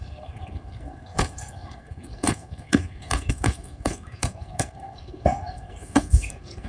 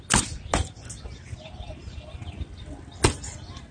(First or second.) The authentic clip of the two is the second